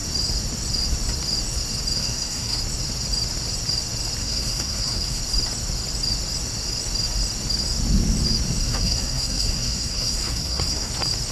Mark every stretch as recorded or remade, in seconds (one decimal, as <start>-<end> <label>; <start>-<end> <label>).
0.0-2.0 recorded; 2.0-2.6 remade; 2.6-4.2 recorded; 4.2-5.2 remade; 5.2-8.6 recorded; 8.6-10.9 remade; 10.9-11.3 recorded